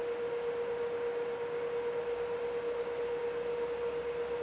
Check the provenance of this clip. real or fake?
real